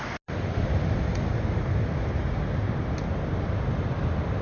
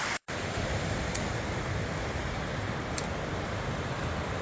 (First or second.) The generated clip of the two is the second